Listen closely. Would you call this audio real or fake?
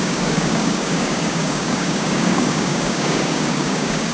fake